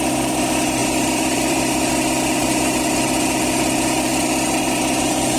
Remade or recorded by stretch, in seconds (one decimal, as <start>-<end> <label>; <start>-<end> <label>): 0.0-0.8 recorded; 0.8-1.9 remade; 1.9-2.4 recorded; 2.4-2.9 remade; 2.9-5.4 recorded